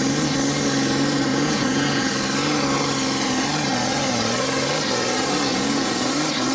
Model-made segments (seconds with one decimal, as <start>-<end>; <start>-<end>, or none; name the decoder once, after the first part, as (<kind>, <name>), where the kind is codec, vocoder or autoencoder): 1.3-2.1 (vocoder, Vocos); 5.5-6.1